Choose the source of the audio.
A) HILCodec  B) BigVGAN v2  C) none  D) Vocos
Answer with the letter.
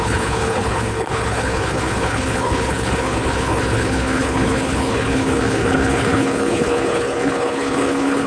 A